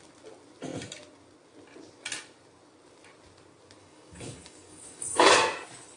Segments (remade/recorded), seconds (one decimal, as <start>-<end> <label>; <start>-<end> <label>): 0.0-3.8 recorded; 3.8-5.3 remade; 5.3-6.0 recorded